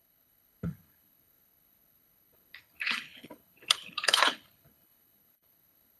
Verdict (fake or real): fake